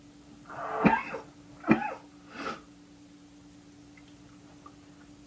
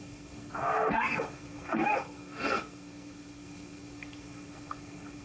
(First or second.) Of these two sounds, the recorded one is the first